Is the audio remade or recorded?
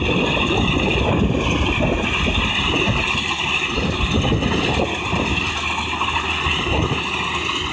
recorded